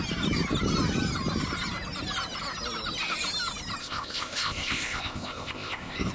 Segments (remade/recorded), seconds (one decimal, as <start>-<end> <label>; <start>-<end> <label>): 0.0-3.8 recorded; 3.8-6.1 remade